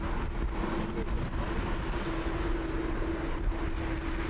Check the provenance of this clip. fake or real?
real